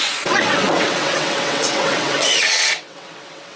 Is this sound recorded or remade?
remade